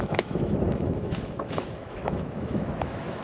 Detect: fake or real fake